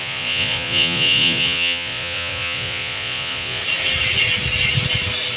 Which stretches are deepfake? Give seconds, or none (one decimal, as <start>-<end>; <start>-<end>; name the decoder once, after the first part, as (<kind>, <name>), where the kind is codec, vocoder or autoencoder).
0.0-3.6 (vocoder, Vocos)